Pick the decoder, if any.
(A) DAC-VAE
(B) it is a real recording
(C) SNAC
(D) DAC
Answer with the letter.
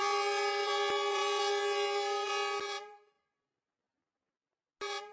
B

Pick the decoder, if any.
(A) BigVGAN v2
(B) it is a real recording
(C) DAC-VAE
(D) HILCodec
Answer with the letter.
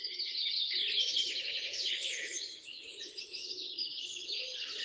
D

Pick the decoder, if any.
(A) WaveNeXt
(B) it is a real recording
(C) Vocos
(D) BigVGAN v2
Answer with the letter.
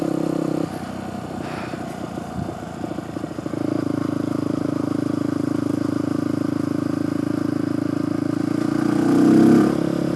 B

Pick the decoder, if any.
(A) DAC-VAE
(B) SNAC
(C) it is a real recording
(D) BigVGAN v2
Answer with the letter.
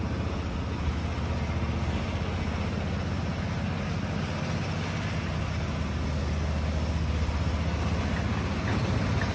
C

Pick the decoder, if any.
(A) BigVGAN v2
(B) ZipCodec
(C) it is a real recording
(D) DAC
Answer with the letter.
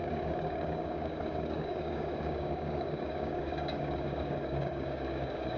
D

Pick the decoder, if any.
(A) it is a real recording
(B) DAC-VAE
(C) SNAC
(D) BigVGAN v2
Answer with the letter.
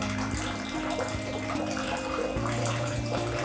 D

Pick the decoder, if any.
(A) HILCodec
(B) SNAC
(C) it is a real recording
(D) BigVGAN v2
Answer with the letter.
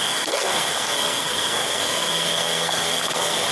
B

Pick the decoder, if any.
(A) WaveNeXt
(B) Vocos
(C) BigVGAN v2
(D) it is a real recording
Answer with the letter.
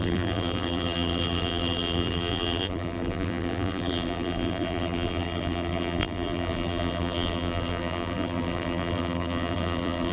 C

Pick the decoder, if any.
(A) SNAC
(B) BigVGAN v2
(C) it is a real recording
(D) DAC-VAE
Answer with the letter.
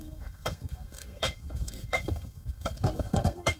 A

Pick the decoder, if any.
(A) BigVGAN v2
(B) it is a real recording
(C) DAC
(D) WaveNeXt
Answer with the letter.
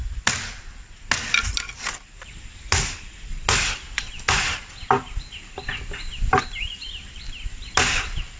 B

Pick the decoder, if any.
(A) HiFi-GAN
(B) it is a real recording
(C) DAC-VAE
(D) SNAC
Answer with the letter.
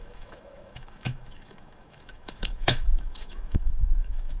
C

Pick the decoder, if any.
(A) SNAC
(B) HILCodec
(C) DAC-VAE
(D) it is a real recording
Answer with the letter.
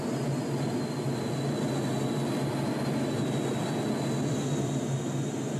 D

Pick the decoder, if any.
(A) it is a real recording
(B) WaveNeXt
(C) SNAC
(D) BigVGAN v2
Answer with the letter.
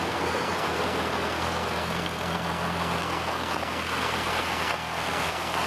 C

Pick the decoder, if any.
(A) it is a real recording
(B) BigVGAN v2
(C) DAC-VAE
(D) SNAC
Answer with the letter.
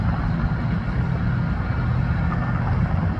A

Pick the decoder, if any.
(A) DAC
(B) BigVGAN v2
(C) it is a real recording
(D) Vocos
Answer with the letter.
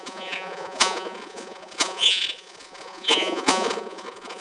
D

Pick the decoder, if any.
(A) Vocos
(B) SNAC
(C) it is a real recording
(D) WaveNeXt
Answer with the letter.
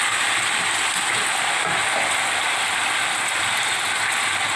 C